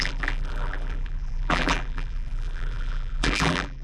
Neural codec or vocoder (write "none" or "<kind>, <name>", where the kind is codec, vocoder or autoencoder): vocoder, BigVGAN v2